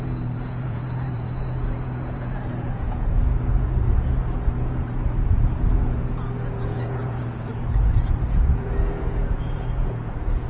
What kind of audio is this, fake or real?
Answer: fake